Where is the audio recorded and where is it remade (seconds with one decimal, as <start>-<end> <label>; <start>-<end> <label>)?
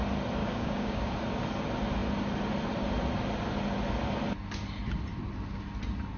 0.0-0.4 recorded; 0.4-1.1 remade; 1.1-6.2 recorded